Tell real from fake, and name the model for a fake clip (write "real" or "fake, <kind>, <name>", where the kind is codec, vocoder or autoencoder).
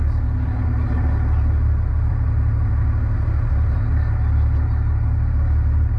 real